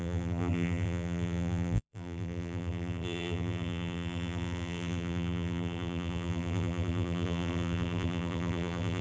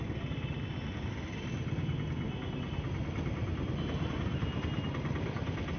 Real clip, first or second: second